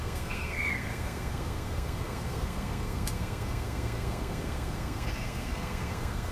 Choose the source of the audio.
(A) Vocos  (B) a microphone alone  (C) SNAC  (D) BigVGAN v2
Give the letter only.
C